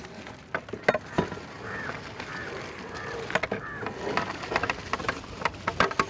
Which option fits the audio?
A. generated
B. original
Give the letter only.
B